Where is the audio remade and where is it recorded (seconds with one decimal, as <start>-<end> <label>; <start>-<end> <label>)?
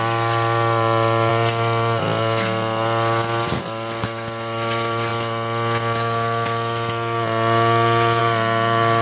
0.0-5.1 remade; 5.1-8.2 recorded; 8.2-9.0 remade